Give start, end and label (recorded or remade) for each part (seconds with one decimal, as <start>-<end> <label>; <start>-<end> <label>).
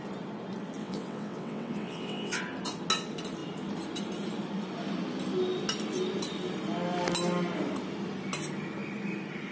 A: 0.0-0.8 recorded; 0.8-2.4 remade; 2.4-9.5 recorded